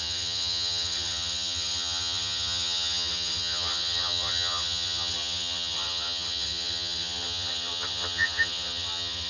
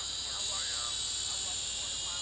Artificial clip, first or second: first